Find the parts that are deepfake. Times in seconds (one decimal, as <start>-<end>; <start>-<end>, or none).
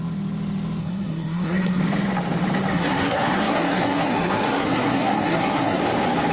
0.8-1.8; 2.7-5.8